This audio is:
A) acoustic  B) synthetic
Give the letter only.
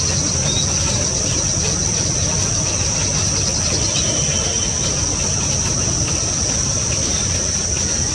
A